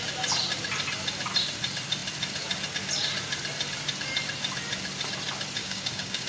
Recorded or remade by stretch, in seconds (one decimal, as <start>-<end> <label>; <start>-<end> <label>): 0.0-5.6 recorded; 5.6-6.3 remade